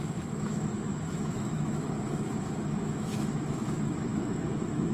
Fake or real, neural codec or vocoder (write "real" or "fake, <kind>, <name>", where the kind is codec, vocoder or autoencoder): fake, autoencoder, DAC-VAE